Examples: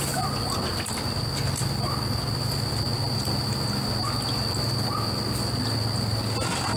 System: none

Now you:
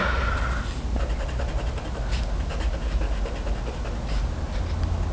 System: none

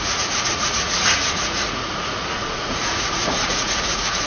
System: vocoder, Vocos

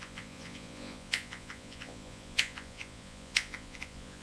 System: vocoder, Vocos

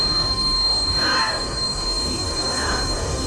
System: codec, DAC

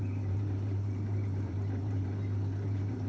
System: vocoder, BigVGAN v2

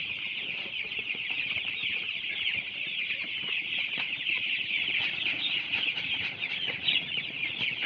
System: vocoder, Vocos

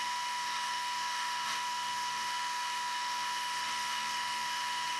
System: autoencoder, DAC-VAE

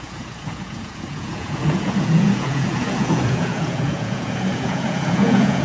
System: vocoder, Vocos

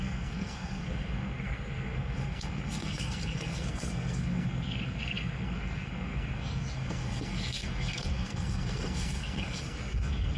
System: codec, SNAC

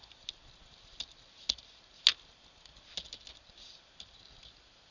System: none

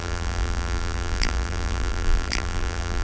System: vocoder, BigVGAN v2